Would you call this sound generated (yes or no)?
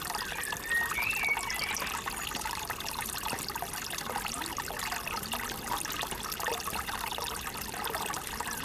no